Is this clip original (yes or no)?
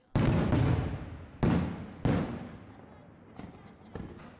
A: yes